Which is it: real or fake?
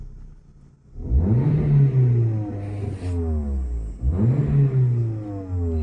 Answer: real